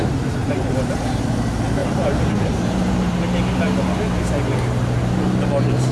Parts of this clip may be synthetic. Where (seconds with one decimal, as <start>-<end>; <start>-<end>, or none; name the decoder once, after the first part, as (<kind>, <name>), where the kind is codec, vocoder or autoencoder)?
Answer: 0.4-1.2 (vocoder, BigVGAN v2); 1.8-2.9